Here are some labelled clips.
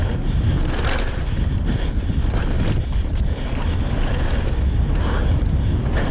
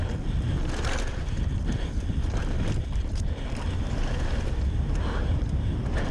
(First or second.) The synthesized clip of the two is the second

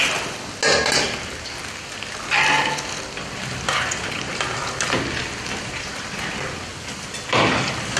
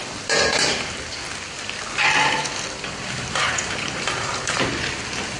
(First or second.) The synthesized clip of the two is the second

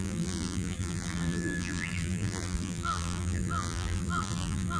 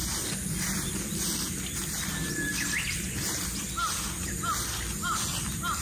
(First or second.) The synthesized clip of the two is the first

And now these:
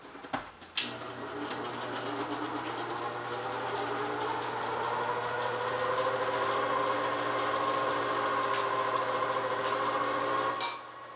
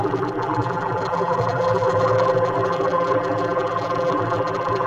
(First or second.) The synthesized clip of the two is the second